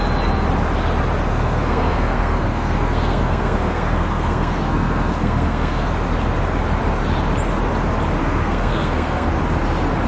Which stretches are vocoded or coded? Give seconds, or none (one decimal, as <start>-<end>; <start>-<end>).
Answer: 1.3-5.9; 8.2-9.3